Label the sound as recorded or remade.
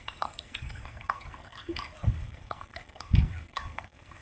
remade